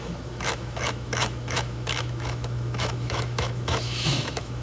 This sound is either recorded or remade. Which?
remade